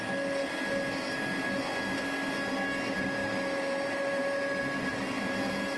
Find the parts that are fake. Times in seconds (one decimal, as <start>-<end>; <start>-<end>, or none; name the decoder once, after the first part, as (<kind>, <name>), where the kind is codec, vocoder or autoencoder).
3.2-4.6 (vocoder, BigVGAN v2)